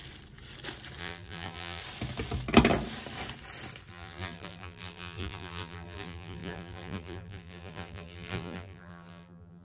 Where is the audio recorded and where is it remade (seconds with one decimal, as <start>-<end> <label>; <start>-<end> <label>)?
0.0-1.0 recorded; 1.0-1.8 remade; 1.8-3.9 recorded; 3.9-9.6 remade